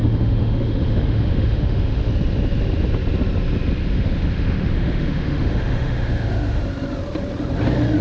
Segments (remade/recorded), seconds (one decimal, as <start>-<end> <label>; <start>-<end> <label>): 0.0-2.1 remade; 2.1-3.8 recorded; 3.8-6.6 remade; 6.6-8.0 recorded